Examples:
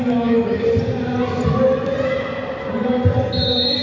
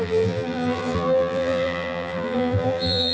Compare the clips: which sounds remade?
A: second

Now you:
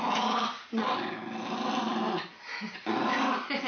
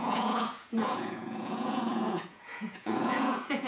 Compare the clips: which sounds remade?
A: second